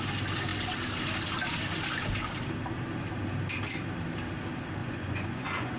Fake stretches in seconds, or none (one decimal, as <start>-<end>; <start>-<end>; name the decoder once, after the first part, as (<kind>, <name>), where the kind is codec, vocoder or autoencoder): 4.8-5.8 (vocoder, Vocos)